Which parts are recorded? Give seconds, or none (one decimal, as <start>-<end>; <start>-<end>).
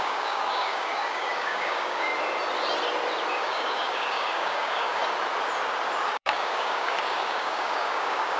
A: 2.1-3.3; 5.0-6.1